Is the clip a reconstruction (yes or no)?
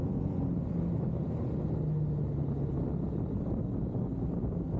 no